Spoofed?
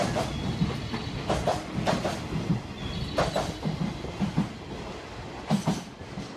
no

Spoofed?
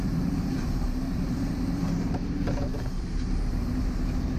yes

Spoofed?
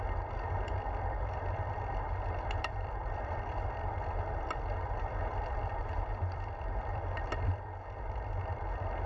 yes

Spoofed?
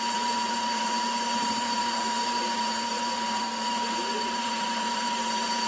yes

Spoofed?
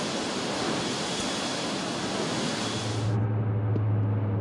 no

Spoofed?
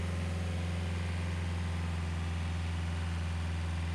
no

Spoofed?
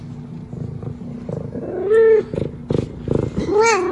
no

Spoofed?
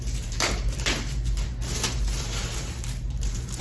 yes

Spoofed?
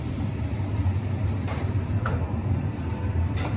yes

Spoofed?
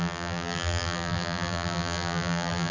yes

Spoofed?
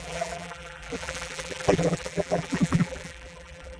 yes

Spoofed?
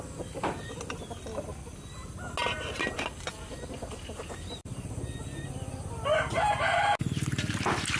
no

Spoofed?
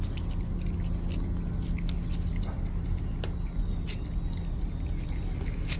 no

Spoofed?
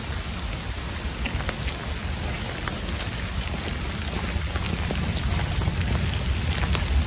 no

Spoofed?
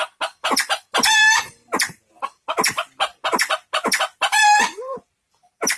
yes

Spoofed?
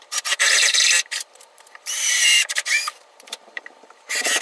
yes